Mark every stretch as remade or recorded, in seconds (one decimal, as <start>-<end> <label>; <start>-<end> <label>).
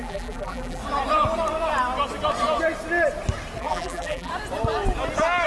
0.0-0.8 remade; 0.8-3.6 recorded; 3.6-4.3 remade; 4.3-5.5 recorded